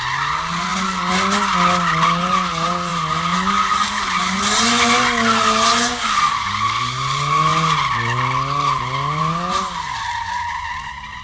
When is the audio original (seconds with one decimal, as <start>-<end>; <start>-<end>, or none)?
0.0-11.2